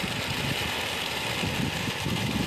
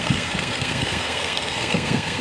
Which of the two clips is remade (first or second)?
second